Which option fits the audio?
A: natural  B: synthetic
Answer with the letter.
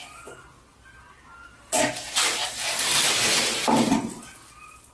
A